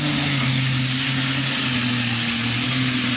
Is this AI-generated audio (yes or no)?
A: no